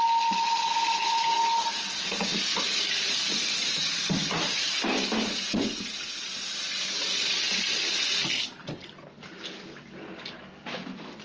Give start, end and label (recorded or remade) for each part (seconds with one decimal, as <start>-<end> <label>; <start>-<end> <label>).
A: 0.0-11.2 recorded